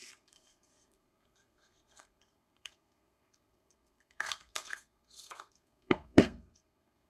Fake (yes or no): yes